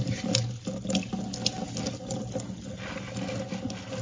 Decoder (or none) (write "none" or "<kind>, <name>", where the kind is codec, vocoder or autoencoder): none